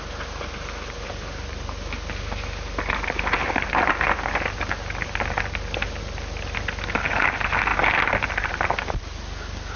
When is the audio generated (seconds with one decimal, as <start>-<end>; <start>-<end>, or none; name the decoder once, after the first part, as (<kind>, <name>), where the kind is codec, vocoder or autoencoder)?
none